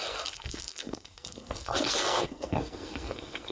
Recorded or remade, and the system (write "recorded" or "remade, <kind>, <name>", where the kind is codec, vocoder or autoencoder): remade, codec, SNAC